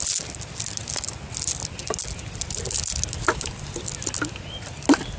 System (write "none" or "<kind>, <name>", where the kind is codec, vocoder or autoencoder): none